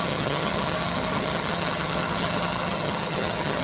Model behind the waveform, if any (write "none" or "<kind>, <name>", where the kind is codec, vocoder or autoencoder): vocoder, HiFi-GAN